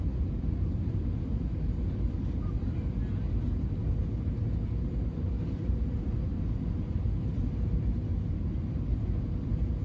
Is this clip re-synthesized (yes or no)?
no